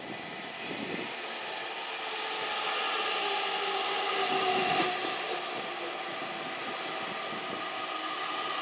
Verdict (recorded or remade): recorded